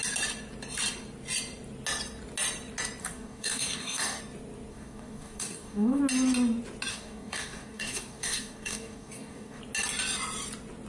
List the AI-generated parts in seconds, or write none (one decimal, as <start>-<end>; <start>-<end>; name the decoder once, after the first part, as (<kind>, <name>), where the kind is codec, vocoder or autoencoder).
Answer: 3.0-4.2 (codec, DAC); 4.7-6.0; 6.9-9.6